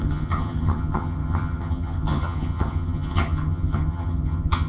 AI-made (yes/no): yes